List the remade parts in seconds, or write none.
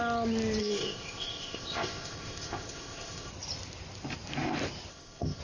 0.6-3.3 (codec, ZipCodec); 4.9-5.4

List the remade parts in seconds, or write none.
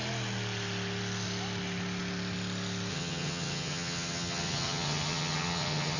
2.9-6.0 (vocoder, HiFi-GAN)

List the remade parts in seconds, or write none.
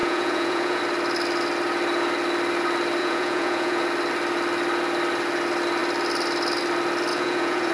0.0-0.8 (vocoder, Vocos); 3.0-3.8; 7.1-7.7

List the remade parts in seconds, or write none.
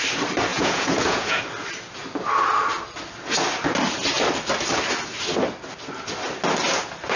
0.5-1.4 (vocoder, Vocos)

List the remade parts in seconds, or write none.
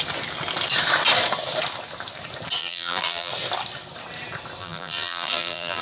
2.6-3.3 (vocoder, BigVGAN v2); 4.6-5.8